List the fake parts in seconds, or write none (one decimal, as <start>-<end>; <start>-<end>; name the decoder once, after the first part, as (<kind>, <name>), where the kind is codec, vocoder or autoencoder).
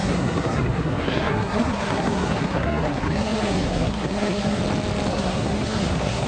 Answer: 0.0-4.6 (codec, SNAC); 5.1-6.3